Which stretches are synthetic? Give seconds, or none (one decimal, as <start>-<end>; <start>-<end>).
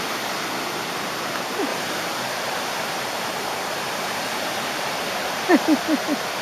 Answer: 1.7-5.5